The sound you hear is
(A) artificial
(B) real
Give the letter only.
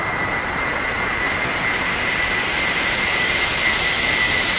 B